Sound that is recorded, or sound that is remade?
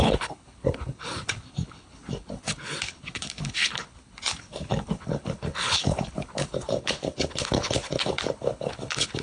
remade